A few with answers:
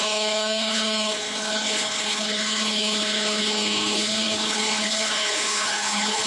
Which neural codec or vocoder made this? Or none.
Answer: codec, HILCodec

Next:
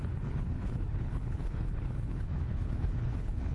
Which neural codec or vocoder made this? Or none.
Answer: codec, HILCodec